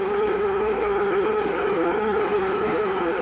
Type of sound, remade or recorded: remade